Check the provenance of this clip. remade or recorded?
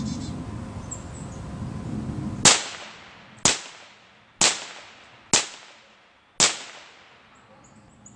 recorded